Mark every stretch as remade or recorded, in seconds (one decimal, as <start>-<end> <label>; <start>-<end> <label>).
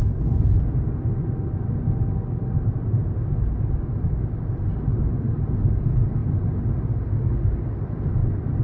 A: 0.0-8.6 recorded